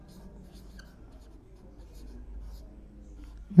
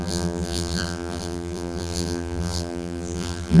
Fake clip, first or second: second